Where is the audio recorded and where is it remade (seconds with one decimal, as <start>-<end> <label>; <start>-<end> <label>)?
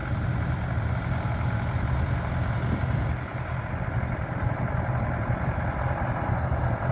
0.0-6.9 recorded